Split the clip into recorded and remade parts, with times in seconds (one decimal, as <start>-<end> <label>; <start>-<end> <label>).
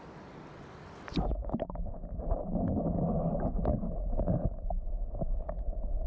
0.0-1.2 recorded; 1.2-2.2 remade; 2.2-6.1 recorded